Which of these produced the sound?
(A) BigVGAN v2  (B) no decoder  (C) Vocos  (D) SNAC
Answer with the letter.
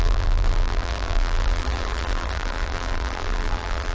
A